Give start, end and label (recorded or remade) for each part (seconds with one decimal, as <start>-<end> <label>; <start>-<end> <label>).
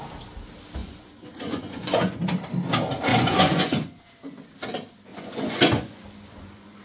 0.0-0.8 recorded; 0.8-2.2 remade; 2.2-3.1 recorded; 3.1-4.1 remade; 4.1-5.1 recorded; 5.1-6.8 remade